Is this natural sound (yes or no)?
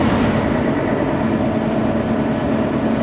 yes